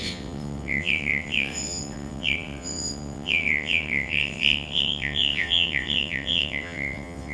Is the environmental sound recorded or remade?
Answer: remade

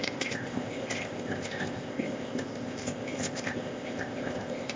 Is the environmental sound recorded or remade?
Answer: remade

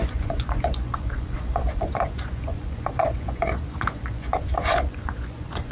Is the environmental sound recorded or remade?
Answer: remade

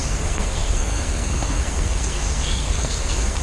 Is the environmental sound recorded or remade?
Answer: remade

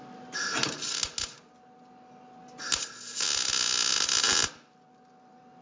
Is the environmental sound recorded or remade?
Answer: recorded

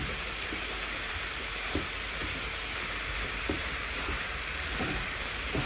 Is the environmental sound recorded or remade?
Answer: remade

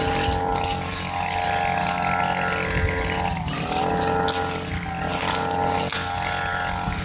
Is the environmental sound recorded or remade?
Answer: recorded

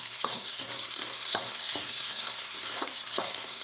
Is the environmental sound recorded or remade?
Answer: remade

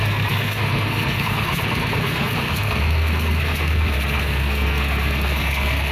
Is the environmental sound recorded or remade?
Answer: remade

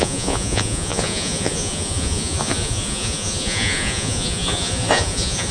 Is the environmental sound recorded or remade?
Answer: remade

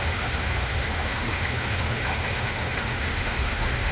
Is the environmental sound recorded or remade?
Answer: remade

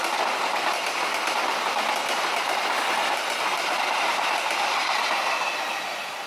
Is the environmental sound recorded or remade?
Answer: recorded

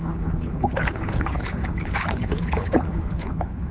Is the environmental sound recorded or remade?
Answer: remade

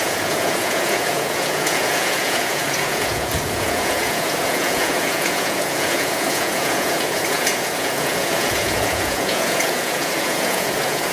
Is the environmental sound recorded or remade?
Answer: remade